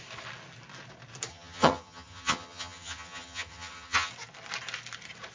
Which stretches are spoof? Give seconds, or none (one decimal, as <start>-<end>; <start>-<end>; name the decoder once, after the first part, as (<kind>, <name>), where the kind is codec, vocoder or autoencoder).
1.3-4.1 (vocoder, HiFi-GAN)